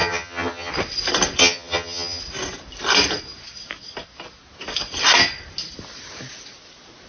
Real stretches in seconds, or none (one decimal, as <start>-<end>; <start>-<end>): 0.7-1.4; 2.2-7.1